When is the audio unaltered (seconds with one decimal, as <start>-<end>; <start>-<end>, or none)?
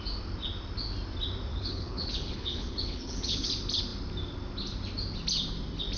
0.0-1.5; 3.5-6.0